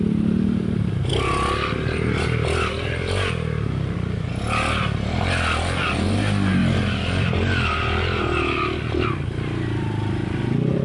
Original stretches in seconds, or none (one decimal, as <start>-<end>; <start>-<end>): 0.0-10.8

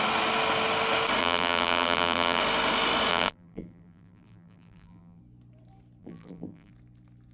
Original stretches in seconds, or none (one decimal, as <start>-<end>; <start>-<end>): 0.0-1.2; 2.4-3.1; 5.2-6.0; 6.7-7.3

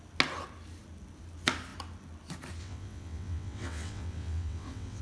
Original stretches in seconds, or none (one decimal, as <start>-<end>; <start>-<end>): 0.0-2.6

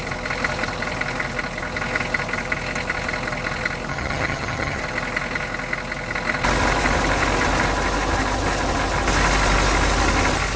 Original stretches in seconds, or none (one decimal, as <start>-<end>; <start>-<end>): 0.0-3.9; 4.8-10.6